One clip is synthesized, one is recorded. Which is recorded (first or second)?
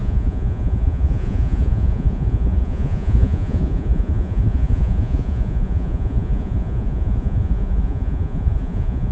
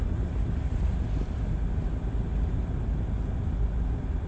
second